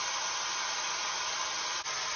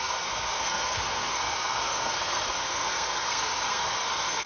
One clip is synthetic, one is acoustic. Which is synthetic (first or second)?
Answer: second